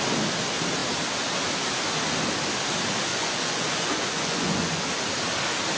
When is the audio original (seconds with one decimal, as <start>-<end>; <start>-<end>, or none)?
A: 0.0-3.1; 4.8-5.8